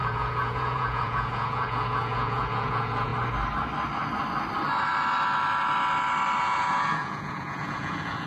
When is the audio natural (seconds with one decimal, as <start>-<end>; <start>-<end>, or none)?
3.1-6.4